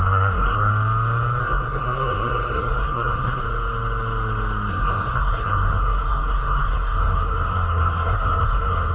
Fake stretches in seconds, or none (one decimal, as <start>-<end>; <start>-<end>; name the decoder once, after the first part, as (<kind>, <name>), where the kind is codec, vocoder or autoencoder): 0.0-0.7 (codec, SNAC); 1.4-3.4; 4.7-8.9

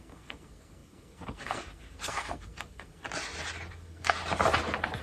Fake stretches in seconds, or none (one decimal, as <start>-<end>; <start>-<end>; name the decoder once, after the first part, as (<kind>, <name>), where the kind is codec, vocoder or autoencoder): 0.0-3.0 (codec, SNAC); 3.7-4.2

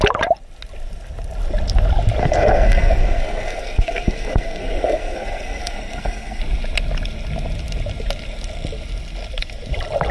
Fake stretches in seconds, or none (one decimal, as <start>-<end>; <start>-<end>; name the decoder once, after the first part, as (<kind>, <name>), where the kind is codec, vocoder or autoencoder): 2.2-6.4 (codec, SNAC)

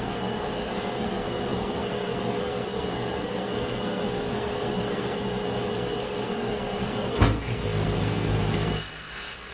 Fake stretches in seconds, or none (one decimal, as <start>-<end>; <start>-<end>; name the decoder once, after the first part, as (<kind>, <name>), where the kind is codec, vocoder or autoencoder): 0.0-9.5 (codec, SNAC)

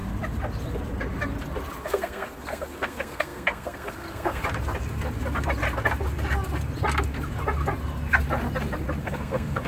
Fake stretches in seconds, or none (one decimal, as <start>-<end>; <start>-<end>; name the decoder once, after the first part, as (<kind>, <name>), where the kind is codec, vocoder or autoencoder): 1.8-4.4 (codec, SNAC); 9.0-9.7

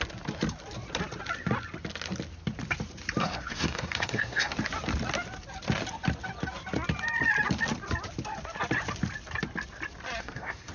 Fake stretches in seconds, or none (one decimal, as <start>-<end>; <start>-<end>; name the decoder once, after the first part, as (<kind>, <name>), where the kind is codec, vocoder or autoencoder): 3.2-4.5 (codec, SNAC); 10.2-10.7

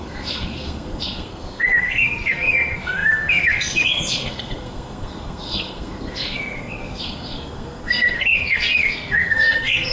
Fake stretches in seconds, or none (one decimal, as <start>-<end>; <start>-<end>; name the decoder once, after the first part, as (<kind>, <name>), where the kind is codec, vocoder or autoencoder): 0.0-9.9 (codec, SNAC)